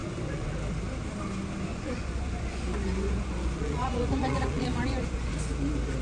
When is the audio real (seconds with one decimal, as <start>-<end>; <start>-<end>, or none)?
0.5-1.7; 5.3-6.0